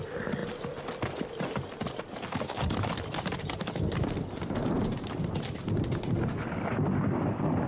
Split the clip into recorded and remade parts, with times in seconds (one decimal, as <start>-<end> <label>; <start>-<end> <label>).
0.0-7.7 recorded